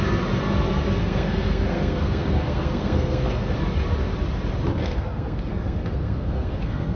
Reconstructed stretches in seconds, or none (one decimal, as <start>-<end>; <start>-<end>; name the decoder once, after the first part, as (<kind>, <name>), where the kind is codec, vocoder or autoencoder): 1.0-3.6 (codec, SNAC); 4.8-7.0